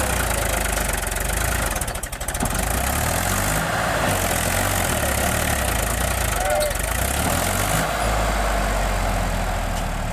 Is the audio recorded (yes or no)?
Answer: yes